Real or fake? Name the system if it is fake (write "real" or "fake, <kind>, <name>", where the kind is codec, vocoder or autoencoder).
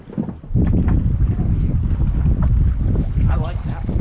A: real